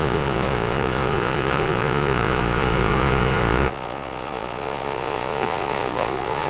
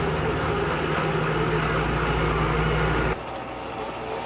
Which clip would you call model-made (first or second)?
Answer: first